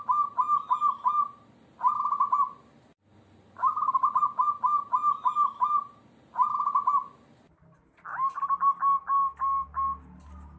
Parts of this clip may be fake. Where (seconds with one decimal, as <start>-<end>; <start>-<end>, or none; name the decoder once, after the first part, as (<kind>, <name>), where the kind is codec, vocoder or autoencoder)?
none